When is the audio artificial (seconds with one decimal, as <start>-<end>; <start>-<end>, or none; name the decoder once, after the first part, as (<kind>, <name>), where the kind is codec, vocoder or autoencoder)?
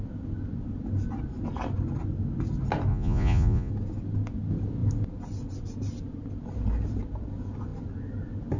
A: 2.9-3.7 (vocoder, Vocos)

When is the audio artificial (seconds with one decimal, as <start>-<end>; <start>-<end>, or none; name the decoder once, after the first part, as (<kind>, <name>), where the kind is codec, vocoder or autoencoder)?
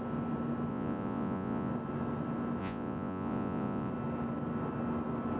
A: 0.7-1.7 (vocoder, Vocos); 2.6-3.9